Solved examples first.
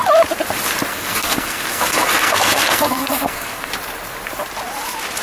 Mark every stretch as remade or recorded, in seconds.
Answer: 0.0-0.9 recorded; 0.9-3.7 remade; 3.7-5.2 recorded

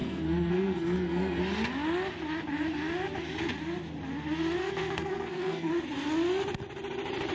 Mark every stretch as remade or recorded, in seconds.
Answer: 0.0-1.4 remade; 1.4-4.6 recorded; 4.6-5.7 remade; 5.7-7.3 recorded

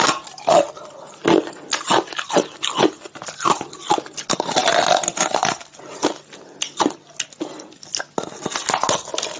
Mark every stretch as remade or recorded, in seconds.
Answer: 0.0-9.4 recorded

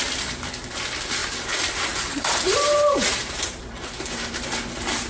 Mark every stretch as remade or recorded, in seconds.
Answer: 0.0-1.2 recorded; 1.2-4.3 remade; 4.3-5.1 recorded

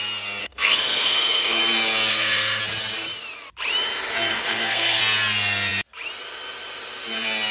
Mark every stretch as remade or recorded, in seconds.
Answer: 0.0-0.4 recorded; 0.4-1.6 remade; 1.6-2.1 recorded; 2.1-2.6 remade; 2.6-4.3 recorded; 4.3-5.0 remade; 5.0-7.5 recorded